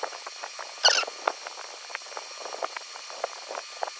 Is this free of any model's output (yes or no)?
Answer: yes